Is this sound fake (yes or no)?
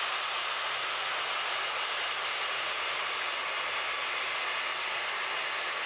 no